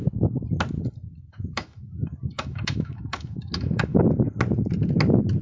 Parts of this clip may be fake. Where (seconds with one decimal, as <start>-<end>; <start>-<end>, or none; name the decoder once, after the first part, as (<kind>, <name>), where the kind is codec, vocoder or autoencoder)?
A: 1.3-4.0 (autoencoder, DAC-VAE)